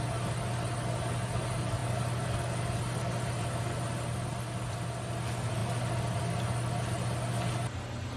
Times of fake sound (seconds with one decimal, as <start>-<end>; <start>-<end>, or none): none